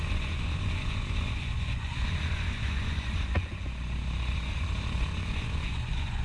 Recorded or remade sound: remade